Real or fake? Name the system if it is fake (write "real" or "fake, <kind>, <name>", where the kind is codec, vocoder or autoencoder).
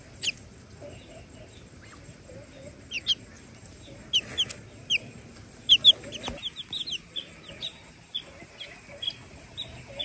real